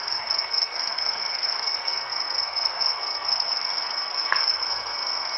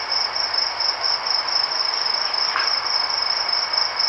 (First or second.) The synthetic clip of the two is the first